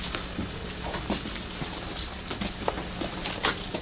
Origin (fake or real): real